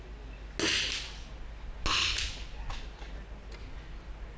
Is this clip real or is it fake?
real